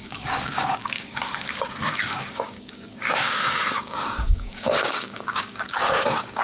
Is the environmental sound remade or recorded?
remade